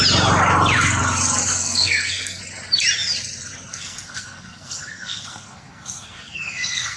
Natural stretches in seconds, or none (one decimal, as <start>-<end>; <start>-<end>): 0.0-1.5; 2.4-3.7